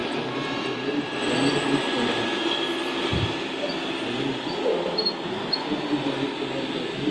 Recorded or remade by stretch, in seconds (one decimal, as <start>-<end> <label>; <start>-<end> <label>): 0.0-7.1 recorded